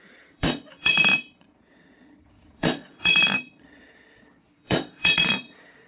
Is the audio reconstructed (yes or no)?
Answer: yes